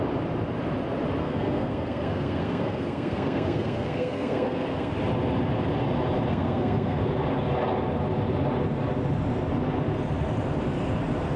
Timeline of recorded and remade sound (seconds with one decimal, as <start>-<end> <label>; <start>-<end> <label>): 0.0-1.2 recorded; 1.2-4.9 remade; 4.9-6.3 recorded; 6.3-7.0 remade; 7.0-11.4 recorded